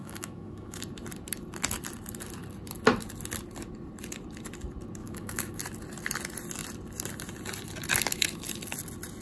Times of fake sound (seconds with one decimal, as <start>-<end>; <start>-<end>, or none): 0.0-0.8; 5.0-5.6